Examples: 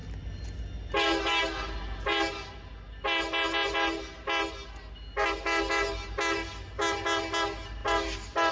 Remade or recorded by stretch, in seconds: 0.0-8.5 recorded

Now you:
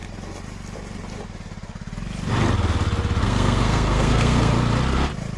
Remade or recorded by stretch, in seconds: 0.0-3.2 recorded; 3.2-4.5 remade; 4.5-5.4 recorded

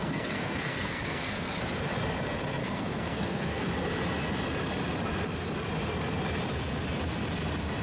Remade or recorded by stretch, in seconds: 0.0-1.5 remade; 1.5-2.6 recorded; 2.6-3.6 remade; 3.6-7.8 recorded